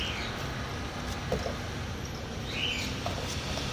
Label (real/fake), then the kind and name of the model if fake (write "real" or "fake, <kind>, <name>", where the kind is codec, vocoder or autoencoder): real